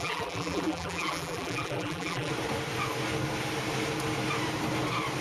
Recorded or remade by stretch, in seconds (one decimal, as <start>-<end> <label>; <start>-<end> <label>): 0.0-2.3 remade; 2.3-5.2 recorded